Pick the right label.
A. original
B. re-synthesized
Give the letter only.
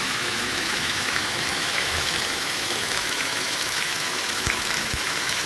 B